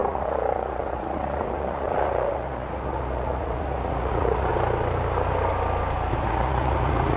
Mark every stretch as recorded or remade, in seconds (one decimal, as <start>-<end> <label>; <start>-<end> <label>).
0.0-4.5 remade; 4.5-6.2 recorded; 6.2-7.2 remade